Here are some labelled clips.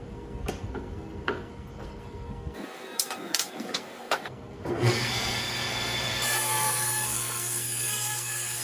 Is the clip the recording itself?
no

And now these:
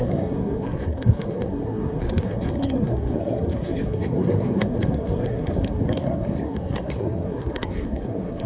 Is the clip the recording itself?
no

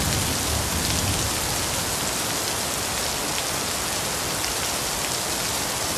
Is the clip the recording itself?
yes